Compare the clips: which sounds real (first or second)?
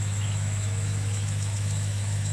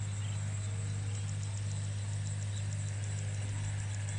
second